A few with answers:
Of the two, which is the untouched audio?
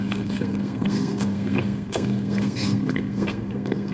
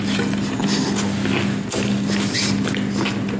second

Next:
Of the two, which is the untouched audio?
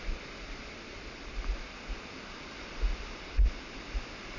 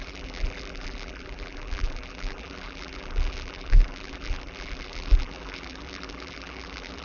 first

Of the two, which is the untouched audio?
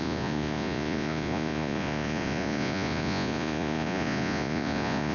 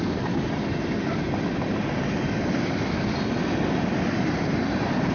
second